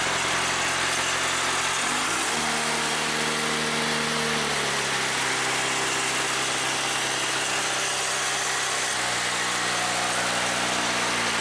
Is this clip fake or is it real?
real